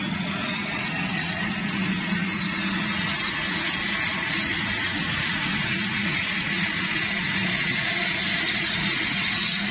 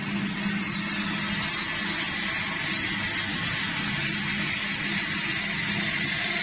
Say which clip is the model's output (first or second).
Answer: first